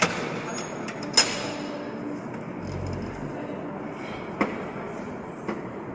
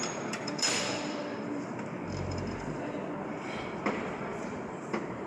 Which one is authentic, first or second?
first